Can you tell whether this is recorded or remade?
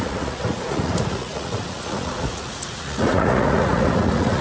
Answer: remade